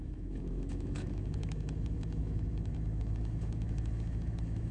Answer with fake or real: fake